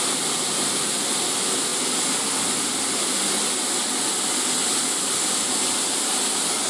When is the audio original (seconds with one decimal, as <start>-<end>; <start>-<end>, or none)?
1.7-5.7